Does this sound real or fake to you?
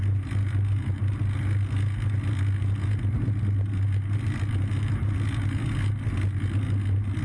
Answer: real